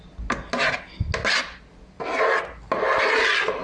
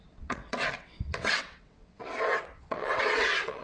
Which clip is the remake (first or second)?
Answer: second